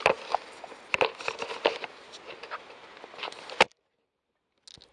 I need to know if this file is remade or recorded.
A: recorded